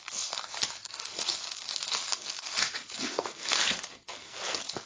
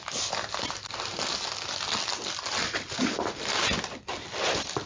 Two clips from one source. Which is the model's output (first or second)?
first